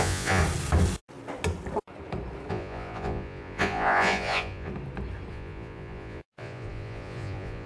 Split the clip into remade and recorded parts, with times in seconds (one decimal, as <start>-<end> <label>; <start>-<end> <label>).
0.0-0.4 remade; 0.4-2.5 recorded; 2.5-4.7 remade; 4.7-5.3 recorded; 5.3-7.7 remade